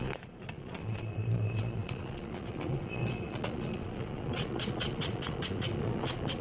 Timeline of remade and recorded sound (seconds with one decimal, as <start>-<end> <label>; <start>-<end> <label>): 0.0-6.4 remade